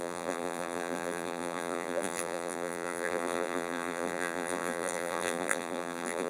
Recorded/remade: remade